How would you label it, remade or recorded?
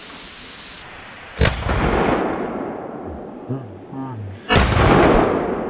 recorded